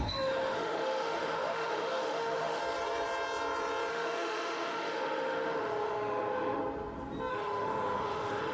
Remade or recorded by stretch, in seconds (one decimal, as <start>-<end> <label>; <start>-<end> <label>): 0.0-2.6 remade; 2.6-3.9 recorded; 3.9-6.6 remade; 6.6-7.3 recorded; 7.3-8.5 remade